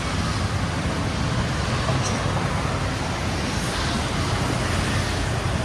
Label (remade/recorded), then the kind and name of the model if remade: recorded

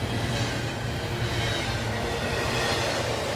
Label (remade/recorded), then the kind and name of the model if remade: recorded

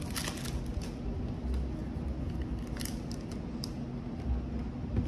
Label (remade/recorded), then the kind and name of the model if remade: recorded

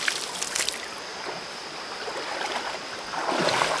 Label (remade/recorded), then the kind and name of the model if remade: recorded